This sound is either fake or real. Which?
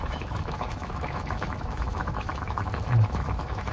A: fake